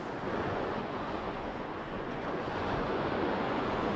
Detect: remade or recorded remade